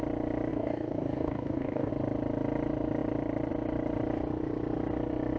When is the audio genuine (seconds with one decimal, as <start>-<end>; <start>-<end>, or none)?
0.0-0.5; 1.9-5.4